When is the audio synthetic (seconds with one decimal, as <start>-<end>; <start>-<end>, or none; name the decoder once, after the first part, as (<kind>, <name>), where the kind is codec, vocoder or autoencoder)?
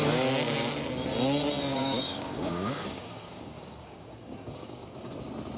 1.7-5.1 (codec, DAC)